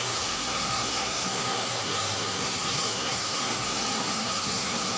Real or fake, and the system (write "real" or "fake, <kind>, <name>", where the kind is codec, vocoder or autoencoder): fake, codec, SNAC